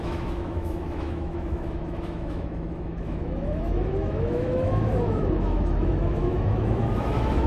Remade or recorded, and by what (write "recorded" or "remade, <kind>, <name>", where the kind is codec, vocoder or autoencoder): remade, autoencoder, DAC-VAE